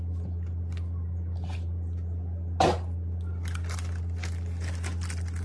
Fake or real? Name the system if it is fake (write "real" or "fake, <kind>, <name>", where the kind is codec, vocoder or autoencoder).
real